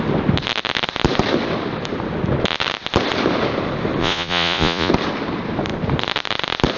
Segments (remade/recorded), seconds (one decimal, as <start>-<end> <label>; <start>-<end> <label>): 0.0-4.0 recorded; 4.0-4.9 remade; 4.9-6.8 recorded